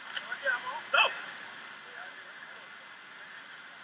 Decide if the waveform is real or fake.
real